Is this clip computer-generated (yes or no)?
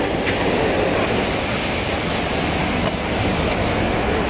no